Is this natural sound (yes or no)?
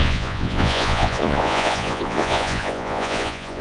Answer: no